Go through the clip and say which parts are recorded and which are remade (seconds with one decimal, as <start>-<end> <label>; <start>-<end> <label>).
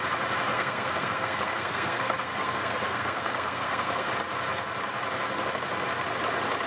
0.0-0.5 recorded; 0.5-4.1 remade; 4.1-6.7 recorded